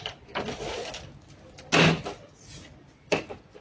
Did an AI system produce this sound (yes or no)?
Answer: no